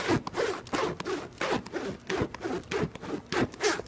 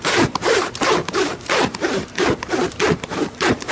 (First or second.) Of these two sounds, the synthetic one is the second